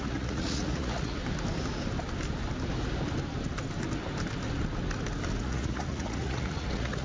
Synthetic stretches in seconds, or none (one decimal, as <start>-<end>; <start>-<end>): 0.0-1.2; 5.4-7.0